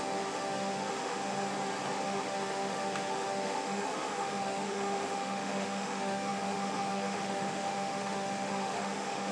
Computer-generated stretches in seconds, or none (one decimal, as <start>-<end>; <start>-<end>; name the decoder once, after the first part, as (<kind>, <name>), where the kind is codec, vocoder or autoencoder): 0.0-1.2 (autoencoder, DAC-VAE); 2.0-9.3